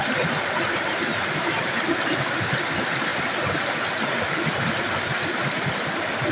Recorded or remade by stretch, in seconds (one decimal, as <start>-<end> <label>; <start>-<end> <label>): 0.0-6.3 recorded